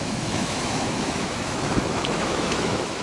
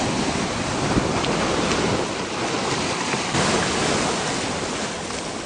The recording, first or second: second